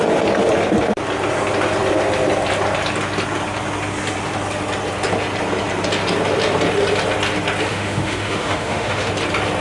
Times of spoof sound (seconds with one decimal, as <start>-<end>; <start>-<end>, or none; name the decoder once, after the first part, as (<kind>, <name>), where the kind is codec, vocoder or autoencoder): 7.7-9.1 (autoencoder, DAC-VAE)